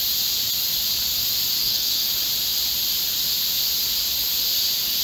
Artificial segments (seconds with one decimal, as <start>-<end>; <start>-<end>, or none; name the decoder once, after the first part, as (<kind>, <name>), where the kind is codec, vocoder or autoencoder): 1.6-2.1 (codec, SNAC)